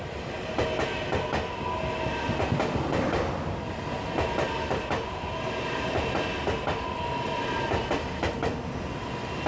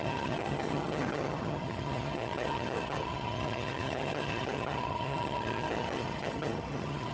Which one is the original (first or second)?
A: first